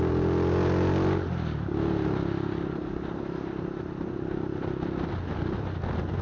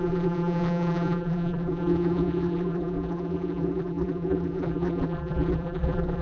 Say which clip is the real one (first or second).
first